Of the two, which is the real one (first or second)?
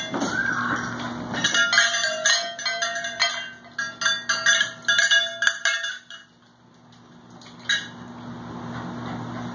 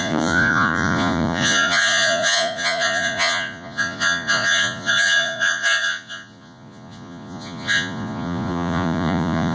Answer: first